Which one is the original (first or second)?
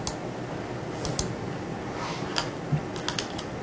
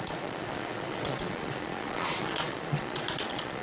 first